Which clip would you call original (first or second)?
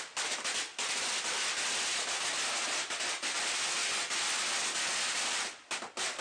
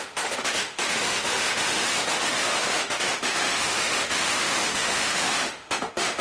first